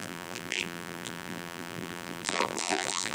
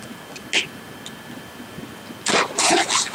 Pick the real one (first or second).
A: second